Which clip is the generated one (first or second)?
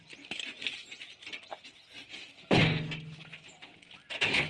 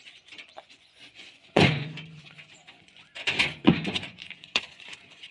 second